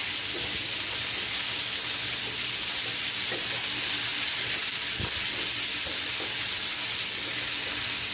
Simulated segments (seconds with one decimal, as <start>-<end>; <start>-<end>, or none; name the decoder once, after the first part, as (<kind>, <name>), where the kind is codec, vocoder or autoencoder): none